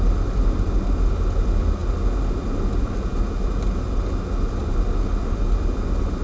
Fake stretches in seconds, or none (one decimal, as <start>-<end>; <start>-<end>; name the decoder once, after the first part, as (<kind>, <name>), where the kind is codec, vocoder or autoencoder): none